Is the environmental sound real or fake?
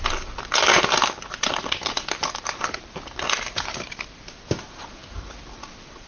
real